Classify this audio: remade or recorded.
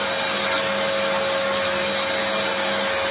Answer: recorded